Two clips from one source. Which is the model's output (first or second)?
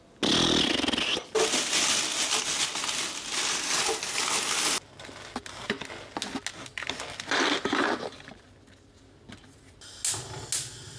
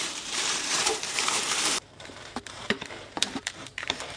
second